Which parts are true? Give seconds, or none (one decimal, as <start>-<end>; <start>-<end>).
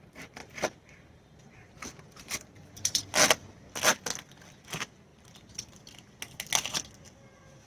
0.0-0.4; 3.0-5.1; 6.2-7.7